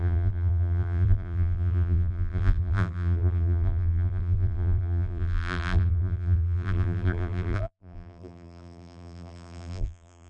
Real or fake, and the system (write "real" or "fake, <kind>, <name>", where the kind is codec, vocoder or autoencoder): fake, vocoder, BigVGAN v2